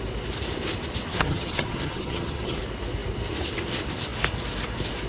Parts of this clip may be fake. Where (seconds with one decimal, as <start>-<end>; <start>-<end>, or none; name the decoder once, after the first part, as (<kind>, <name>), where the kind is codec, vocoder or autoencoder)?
1.1-2.6 (vocoder, HiFi-GAN)